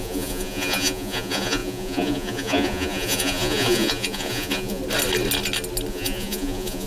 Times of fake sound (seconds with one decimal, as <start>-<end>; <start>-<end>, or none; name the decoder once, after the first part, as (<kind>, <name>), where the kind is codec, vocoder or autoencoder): 0.0-4.8 (vocoder, Vocos); 5.9-6.9